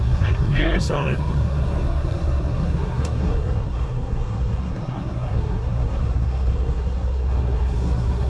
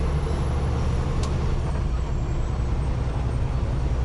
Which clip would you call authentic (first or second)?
second